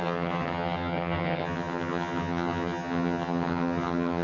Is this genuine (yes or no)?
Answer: no